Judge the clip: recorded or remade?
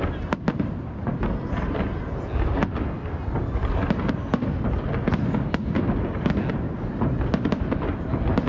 recorded